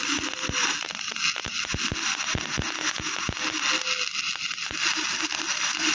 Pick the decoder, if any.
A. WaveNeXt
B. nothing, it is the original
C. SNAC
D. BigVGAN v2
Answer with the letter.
B